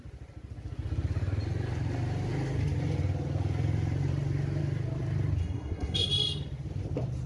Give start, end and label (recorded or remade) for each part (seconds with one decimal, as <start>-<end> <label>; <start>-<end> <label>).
0.0-5.4 recorded; 5.4-6.1 remade; 6.1-7.3 recorded